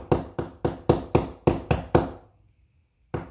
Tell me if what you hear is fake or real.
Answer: real